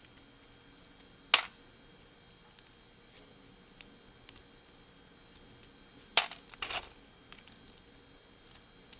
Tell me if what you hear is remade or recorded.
recorded